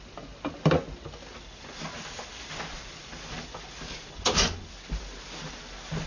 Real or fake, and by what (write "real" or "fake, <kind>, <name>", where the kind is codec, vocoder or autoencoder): real